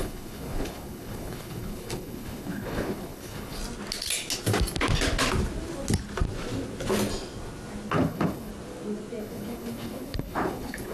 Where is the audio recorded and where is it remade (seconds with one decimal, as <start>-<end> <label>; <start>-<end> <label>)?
0.0-3.6 remade; 3.6-7.9 recorded; 7.9-8.5 remade; 8.5-9.2 recorded; 9.2-10.9 remade